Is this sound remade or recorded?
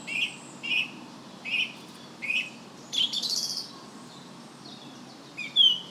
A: remade